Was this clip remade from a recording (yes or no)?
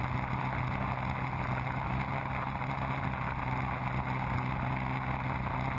no